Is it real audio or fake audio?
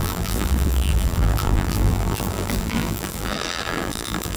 fake